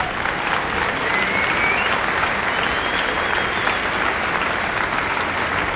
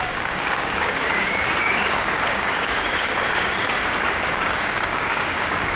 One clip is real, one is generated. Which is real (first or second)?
first